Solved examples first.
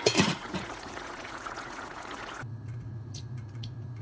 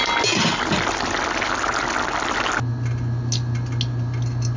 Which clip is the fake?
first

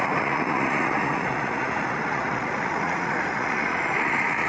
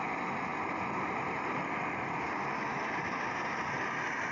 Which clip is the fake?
first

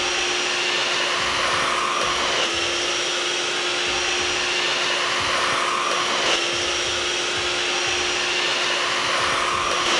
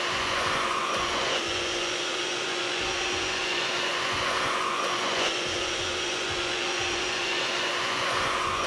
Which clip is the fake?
second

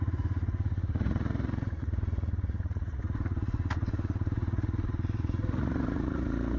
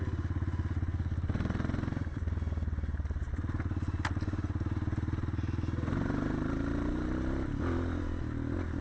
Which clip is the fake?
first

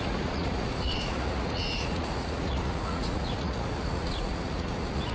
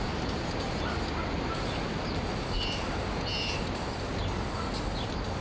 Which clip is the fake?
first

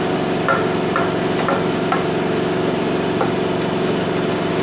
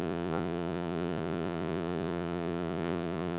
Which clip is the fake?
second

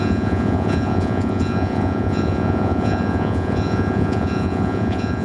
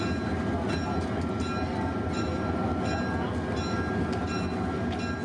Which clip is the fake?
first